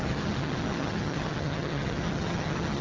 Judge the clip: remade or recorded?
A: remade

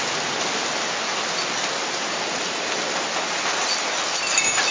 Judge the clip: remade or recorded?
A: recorded